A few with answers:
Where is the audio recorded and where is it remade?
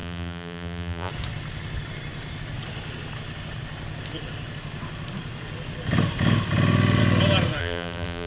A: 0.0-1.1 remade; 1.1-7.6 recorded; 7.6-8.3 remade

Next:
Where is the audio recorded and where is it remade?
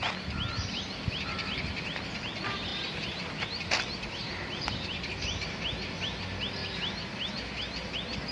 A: 0.0-8.3 recorded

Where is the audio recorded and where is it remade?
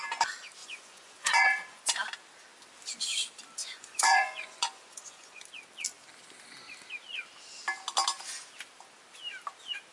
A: 0.0-0.6 recorded; 0.6-1.8 remade; 1.8-3.6 recorded; 3.6-5.4 remade; 5.4-9.9 recorded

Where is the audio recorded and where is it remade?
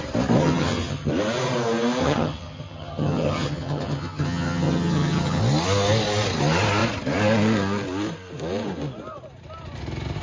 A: 0.0-0.4 recorded; 0.4-1.1 remade; 1.1-2.0 recorded; 2.0-5.4 remade; 5.4-10.2 recorded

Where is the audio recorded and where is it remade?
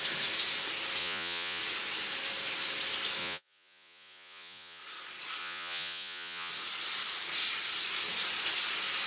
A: 0.0-1.0 recorded; 1.0-1.6 remade; 1.6-3.2 recorded; 3.2-4.8 remade; 4.8-5.4 recorded; 5.4-6.5 remade; 6.5-9.1 recorded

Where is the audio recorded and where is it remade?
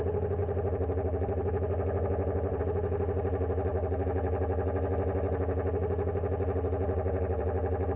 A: 0.0-0.4 recorded; 0.4-2.6 remade; 2.6-8.0 recorded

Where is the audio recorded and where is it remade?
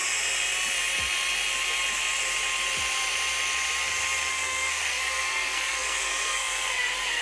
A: 0.0-4.3 recorded; 4.3-7.2 remade